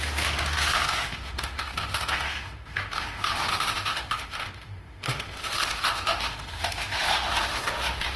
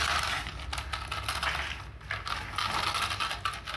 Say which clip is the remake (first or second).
first